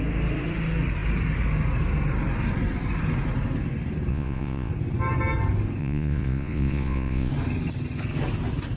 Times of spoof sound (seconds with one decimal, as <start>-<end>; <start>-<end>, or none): 4.1-4.7; 5.8-7.3